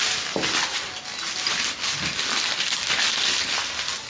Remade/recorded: recorded